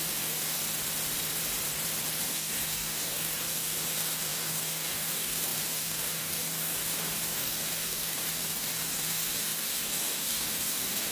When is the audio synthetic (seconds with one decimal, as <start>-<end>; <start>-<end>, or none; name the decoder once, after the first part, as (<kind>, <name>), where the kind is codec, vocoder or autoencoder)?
0.0-0.6 (codec, DAC); 2.2-11.1